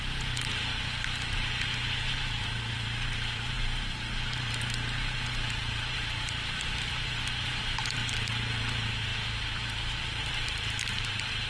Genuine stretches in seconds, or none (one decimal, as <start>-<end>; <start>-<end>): 8.0-8.5; 9.1-9.9